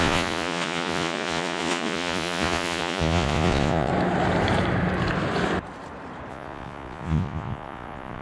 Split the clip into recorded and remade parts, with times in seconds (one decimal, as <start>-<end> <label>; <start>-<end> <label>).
0.0-3.9 remade; 3.9-6.3 recorded; 6.3-8.2 remade